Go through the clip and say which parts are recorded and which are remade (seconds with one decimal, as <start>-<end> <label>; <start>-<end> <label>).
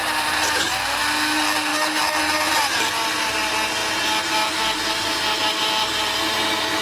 0.0-1.0 remade; 1.0-3.8 recorded; 3.8-5.4 remade; 5.4-6.8 recorded